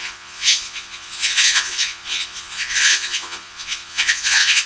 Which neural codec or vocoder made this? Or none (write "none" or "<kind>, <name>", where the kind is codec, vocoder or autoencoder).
vocoder, Vocos